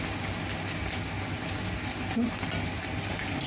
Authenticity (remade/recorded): recorded